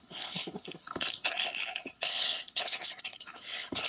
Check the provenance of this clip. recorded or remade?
remade